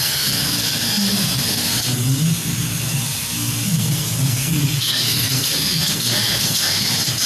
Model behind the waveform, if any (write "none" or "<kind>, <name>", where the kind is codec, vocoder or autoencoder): codec, SNAC